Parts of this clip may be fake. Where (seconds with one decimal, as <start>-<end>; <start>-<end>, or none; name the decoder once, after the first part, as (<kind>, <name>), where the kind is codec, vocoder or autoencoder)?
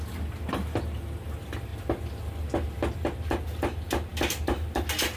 none